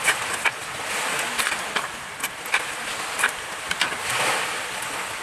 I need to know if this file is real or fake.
real